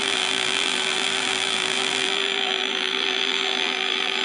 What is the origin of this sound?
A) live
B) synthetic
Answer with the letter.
B